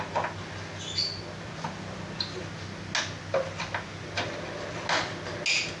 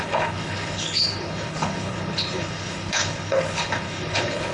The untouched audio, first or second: first